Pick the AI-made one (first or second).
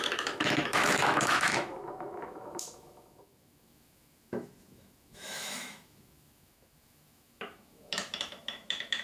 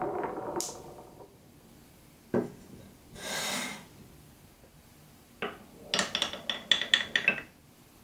first